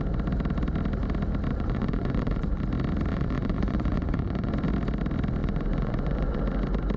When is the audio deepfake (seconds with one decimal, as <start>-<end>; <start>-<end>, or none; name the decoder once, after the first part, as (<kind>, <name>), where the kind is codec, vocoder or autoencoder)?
1.5-2.6 (vocoder, Vocos); 3.1-4.5; 5.4-6.4